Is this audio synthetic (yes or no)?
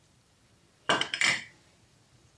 yes